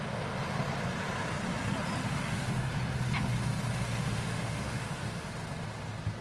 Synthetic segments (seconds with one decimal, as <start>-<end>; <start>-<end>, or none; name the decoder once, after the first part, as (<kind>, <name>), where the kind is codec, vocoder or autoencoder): 2.0-2.7 (autoencoder, DAC-VAE); 4.0-5.3